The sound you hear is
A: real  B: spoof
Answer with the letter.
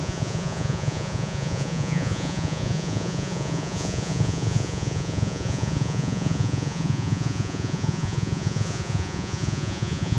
B